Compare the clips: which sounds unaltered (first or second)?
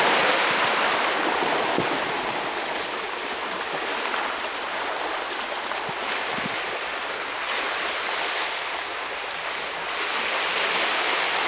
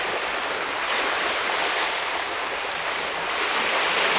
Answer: first